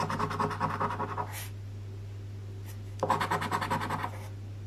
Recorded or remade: recorded